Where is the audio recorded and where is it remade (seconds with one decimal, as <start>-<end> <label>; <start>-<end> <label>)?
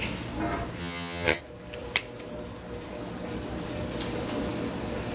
0.0-0.8 recorded; 0.8-1.4 remade; 1.4-5.1 recorded